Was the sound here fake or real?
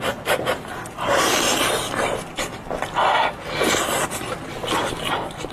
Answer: real